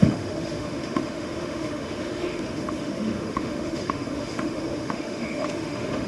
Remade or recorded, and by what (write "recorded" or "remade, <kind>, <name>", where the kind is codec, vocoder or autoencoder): remade, autoencoder, DAC-VAE